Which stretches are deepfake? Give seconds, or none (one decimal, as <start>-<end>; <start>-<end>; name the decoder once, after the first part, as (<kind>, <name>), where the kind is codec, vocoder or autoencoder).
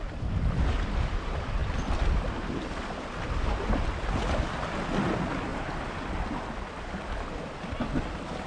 none